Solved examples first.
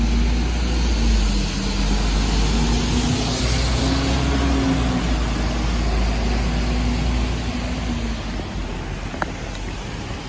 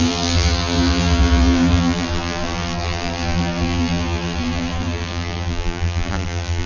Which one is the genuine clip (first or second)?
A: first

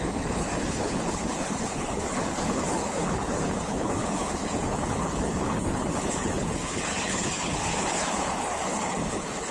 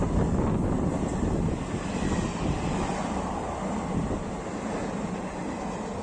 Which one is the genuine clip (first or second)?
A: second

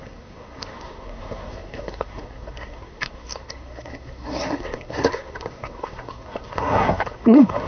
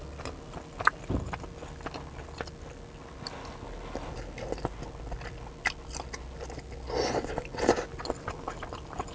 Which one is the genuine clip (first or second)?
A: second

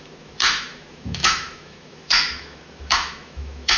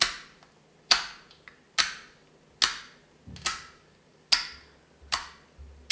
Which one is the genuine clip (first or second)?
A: second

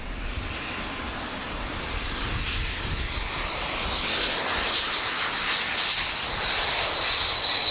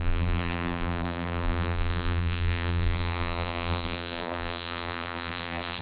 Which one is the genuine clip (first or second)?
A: first